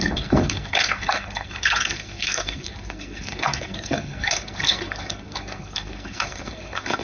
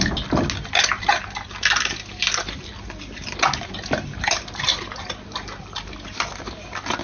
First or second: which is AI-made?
first